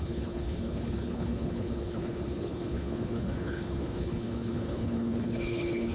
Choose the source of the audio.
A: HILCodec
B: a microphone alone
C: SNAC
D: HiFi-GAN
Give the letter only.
A